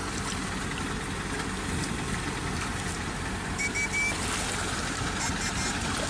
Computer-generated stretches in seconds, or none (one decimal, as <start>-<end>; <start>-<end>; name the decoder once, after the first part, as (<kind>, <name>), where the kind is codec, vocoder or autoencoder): none